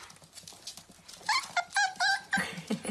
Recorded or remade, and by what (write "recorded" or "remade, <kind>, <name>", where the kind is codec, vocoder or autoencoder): recorded